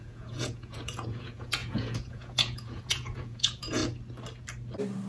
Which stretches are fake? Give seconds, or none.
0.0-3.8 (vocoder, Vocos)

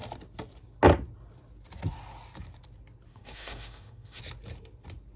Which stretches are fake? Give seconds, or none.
3.1-4.2 (autoencoder, DAC-VAE)

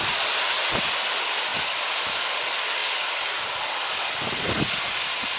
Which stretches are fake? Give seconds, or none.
none